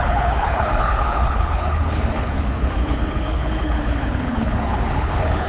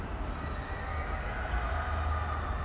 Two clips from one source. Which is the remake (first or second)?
first